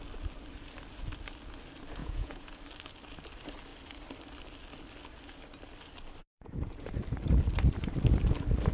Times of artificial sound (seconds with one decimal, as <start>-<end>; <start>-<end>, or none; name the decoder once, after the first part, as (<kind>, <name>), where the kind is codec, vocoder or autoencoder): 2.0-2.6 (vocoder, Vocos); 6.2-6.9